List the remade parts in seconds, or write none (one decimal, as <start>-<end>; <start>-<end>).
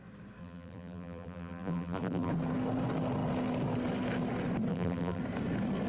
0.4-2.3; 4.7-5.2